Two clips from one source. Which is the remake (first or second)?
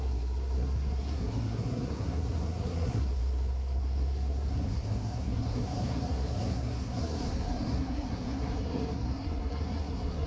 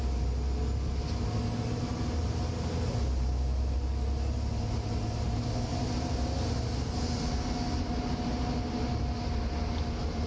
first